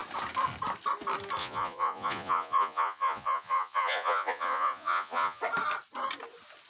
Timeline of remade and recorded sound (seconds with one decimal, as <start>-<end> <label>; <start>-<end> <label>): 0.0-1.4 recorded; 1.4-5.4 remade; 5.4-6.7 recorded